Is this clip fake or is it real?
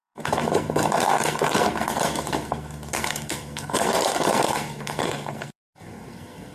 fake